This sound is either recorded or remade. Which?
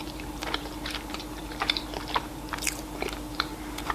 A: remade